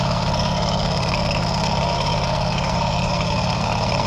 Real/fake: fake